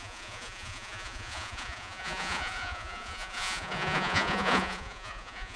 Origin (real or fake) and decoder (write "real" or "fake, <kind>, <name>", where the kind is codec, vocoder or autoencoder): fake, vocoder, Vocos